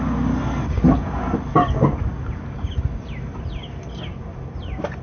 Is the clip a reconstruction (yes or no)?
no